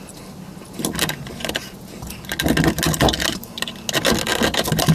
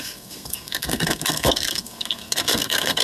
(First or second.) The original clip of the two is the first